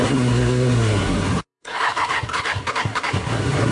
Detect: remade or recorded remade